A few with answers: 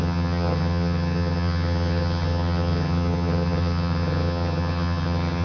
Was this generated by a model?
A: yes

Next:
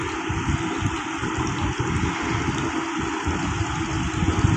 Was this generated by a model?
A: no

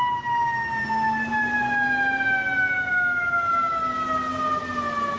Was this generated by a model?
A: no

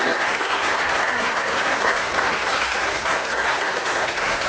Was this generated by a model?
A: yes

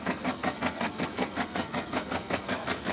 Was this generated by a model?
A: yes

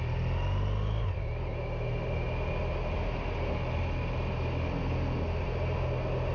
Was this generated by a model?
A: no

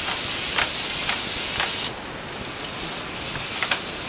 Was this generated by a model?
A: no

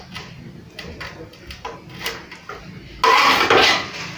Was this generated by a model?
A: no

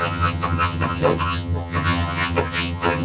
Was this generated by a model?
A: yes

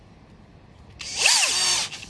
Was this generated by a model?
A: no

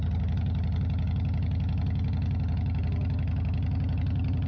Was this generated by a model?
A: no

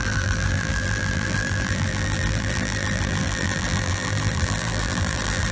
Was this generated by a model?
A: yes